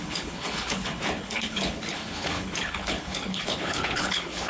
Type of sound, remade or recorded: remade